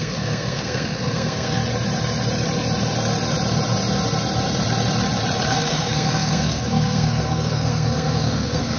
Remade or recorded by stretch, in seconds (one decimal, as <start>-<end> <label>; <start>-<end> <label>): 0.0-1.6 remade; 1.6-5.5 recorded; 5.5-8.8 remade